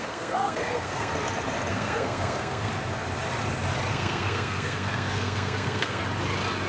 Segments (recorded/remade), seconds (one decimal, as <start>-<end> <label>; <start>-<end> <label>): 0.0-1.1 remade; 1.1-1.7 recorded; 1.7-2.7 remade; 2.7-3.9 recorded; 3.9-6.0 remade; 6.0-6.7 recorded